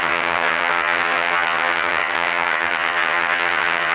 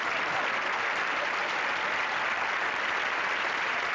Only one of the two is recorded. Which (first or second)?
second